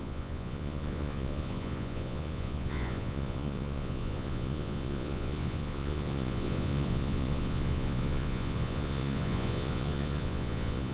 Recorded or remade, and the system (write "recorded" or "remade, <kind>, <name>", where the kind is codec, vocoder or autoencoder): remade, vocoder, Vocos